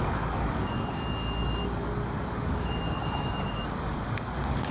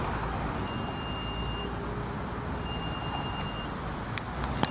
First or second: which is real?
second